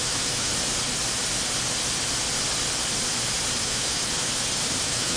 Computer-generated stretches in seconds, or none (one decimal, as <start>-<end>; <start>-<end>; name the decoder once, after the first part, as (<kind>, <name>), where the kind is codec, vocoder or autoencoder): 0.0-0.5 (autoencoder, DAC-VAE); 3.6-4.0; 4.8-5.2